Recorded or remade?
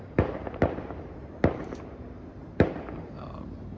remade